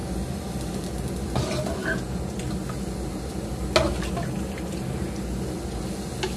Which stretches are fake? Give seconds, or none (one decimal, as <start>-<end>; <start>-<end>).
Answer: none